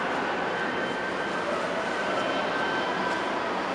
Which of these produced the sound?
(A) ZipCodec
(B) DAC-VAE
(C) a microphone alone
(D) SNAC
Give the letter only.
C